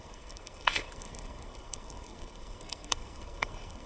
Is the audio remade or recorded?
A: remade